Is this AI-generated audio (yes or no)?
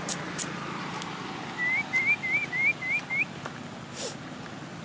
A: no